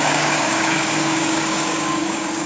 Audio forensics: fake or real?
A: fake